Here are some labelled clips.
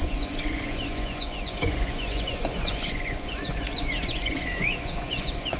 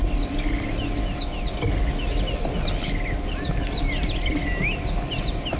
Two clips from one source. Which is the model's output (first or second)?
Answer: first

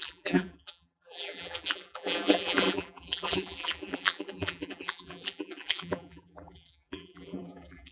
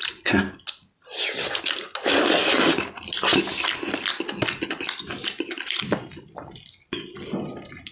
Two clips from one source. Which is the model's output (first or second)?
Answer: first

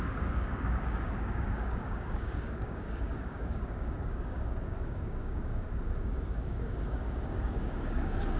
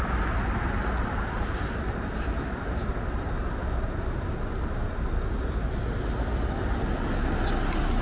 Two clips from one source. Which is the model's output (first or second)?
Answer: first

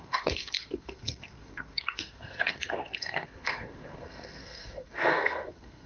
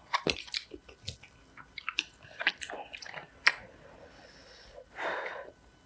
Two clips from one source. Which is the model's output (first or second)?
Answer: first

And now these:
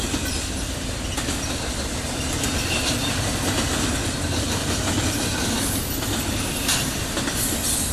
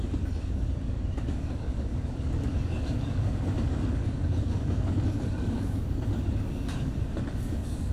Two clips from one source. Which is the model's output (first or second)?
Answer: second